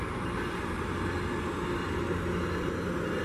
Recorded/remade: recorded